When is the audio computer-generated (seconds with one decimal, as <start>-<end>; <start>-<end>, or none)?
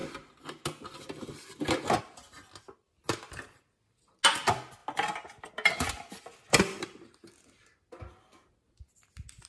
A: none